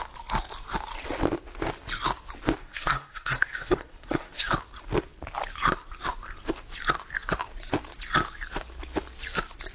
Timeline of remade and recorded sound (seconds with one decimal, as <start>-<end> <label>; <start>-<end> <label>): 0.0-2.6 recorded; 2.6-4.5 remade; 4.5-9.7 recorded

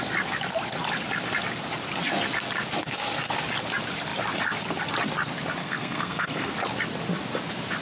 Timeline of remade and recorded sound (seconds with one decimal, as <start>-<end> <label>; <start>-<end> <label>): 0.0-5.6 recorded; 5.6-6.5 remade; 6.5-7.8 recorded